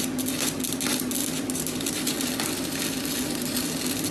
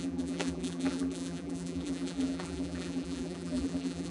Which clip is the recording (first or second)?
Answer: first